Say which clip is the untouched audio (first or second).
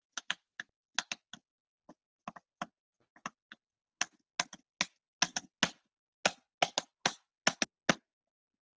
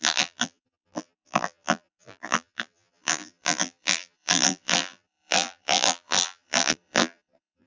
first